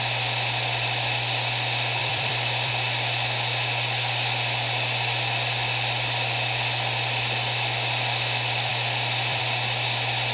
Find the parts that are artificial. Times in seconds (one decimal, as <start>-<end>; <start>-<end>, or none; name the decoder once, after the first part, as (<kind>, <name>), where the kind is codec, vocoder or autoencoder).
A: 2.0-2.7 (vocoder, BigVGAN v2); 8.7-9.4